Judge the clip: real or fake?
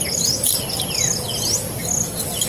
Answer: real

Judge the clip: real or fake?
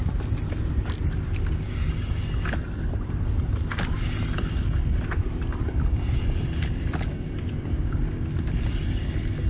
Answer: real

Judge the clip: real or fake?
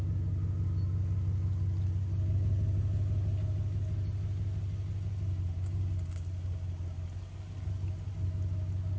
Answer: real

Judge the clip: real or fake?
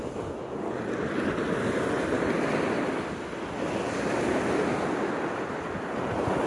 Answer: real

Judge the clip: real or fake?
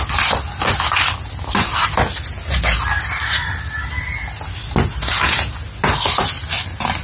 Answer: real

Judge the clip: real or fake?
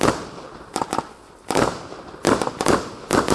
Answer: real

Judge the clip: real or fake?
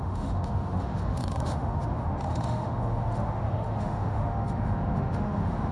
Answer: fake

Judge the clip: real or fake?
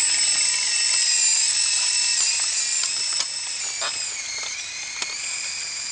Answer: real